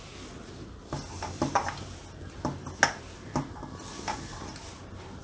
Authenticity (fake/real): real